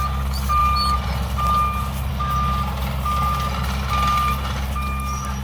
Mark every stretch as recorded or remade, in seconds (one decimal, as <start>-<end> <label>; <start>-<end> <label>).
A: 0.0-5.4 recorded

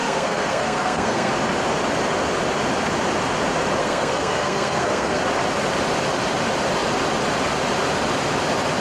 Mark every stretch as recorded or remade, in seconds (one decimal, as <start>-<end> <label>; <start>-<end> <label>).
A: 0.0-1.3 remade; 1.3-3.8 recorded; 3.8-5.2 remade; 5.2-8.8 recorded